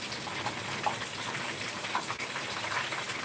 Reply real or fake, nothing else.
real